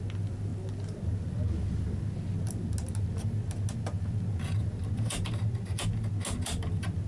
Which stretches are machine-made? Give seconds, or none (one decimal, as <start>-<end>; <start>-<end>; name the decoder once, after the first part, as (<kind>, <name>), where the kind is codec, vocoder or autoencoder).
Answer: none